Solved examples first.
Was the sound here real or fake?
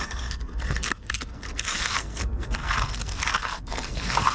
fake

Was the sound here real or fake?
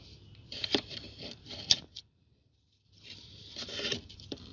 fake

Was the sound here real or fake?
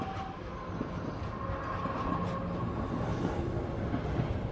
real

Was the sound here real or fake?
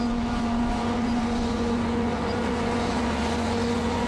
fake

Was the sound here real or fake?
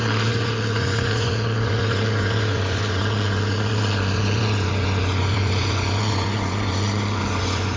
fake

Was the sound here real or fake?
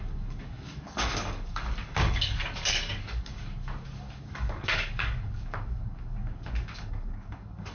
fake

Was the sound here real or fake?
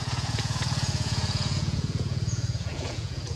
fake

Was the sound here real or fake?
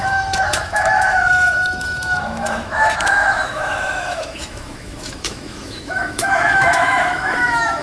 fake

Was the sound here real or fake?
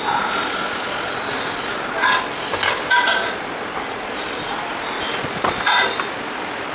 real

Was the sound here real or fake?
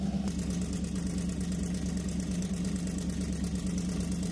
real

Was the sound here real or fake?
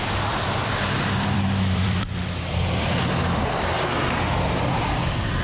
fake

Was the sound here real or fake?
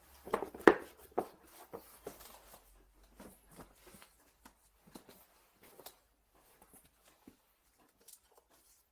fake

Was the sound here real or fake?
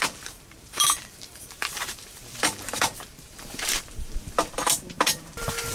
fake